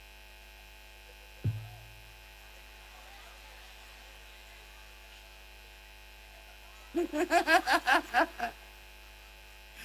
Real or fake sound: real